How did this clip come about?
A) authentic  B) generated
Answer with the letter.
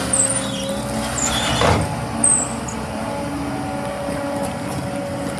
A